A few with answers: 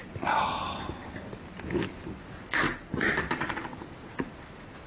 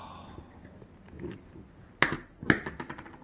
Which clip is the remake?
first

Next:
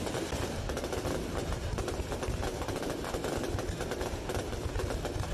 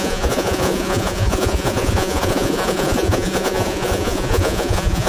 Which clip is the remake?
second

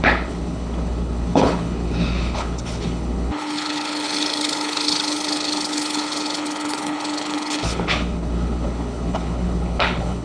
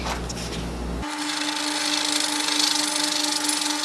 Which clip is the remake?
first